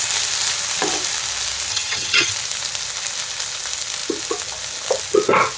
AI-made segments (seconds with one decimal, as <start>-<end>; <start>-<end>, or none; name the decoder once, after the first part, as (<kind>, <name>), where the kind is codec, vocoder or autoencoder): 1.7-2.3 (vocoder, HiFi-GAN)

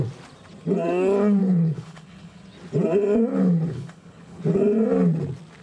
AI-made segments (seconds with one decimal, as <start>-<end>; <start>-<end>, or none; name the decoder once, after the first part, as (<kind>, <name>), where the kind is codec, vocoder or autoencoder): 1.4-2.4 (codec, HILCodec); 3.3-4.4

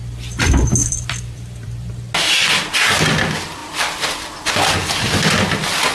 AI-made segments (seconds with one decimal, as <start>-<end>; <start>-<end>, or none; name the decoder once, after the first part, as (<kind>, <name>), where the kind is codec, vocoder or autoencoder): 0.8-1.9 (vocoder, BigVGAN v2); 3.6-4.3

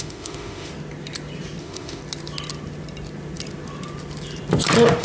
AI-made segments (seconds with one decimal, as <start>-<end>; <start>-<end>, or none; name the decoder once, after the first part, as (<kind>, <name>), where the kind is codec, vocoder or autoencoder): 0.0-0.7 (autoencoder, DAC-VAE); 1.6-2.0

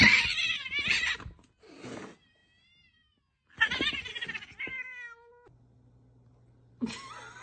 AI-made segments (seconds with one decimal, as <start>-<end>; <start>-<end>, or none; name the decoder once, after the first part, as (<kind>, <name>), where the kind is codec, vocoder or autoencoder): none

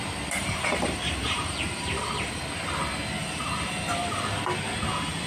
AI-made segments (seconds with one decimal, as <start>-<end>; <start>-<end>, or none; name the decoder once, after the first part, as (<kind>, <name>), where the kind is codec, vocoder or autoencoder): 0.4-2.4 (vocoder, BigVGAN v2); 3.2-4.2